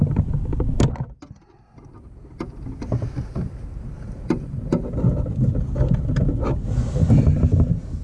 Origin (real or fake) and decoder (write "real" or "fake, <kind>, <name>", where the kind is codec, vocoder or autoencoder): real